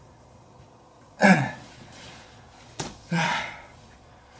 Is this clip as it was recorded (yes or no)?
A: no